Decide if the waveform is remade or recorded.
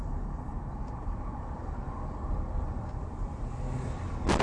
recorded